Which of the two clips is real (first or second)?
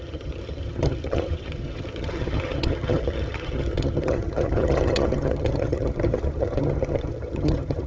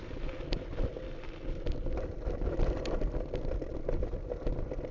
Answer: second